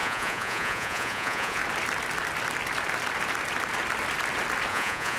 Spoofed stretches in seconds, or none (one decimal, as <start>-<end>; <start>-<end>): 0.0-1.6; 4.7-5.2

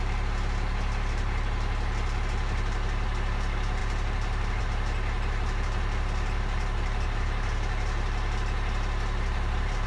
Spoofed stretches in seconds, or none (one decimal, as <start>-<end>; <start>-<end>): none